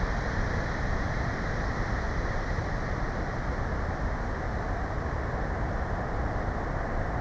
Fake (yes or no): yes